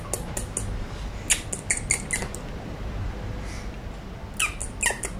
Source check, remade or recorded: recorded